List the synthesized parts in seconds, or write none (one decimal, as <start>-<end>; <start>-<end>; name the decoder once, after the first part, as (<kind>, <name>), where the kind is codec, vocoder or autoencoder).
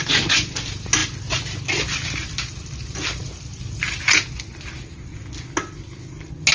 none